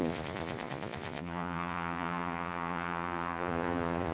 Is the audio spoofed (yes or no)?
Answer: yes